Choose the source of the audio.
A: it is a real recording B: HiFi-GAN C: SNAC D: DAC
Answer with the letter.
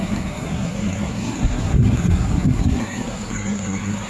C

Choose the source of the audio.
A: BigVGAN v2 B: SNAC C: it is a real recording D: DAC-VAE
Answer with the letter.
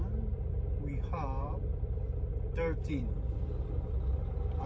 A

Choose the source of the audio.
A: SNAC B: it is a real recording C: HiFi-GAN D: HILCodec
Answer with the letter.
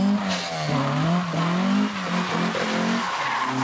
B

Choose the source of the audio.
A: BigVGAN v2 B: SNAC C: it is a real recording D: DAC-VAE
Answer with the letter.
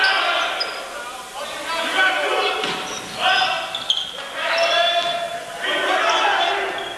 C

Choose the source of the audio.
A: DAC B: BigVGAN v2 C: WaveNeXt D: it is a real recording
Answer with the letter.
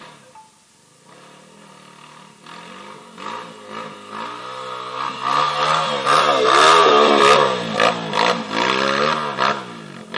D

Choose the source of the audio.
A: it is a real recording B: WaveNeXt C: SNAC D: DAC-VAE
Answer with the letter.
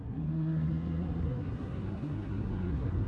C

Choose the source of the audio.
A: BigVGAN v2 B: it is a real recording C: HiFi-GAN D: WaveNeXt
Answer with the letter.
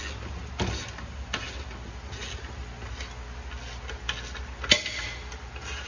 B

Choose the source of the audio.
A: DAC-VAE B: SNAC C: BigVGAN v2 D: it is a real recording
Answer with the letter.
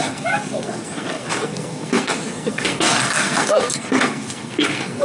B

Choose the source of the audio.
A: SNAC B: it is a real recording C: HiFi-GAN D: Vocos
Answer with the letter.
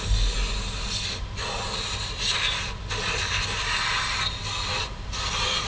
B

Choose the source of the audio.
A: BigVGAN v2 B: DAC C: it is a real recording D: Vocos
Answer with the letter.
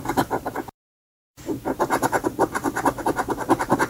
A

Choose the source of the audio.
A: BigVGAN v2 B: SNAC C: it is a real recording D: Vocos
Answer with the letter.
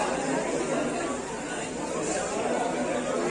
C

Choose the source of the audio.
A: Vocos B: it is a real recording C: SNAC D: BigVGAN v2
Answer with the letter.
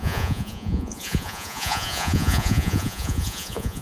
A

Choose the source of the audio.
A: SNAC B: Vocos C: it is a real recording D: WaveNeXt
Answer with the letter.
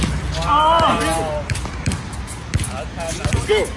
C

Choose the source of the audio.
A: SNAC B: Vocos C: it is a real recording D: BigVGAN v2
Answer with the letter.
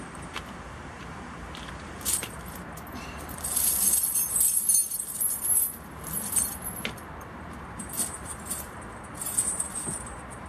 D